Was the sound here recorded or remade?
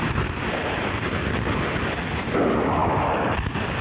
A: recorded